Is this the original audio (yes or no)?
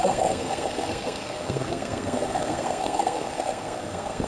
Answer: no